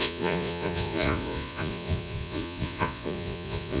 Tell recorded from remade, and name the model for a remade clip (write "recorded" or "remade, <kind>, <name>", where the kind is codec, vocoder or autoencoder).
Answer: remade, vocoder, Vocos